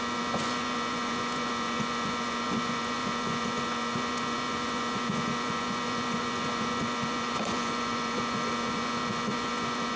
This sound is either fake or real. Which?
fake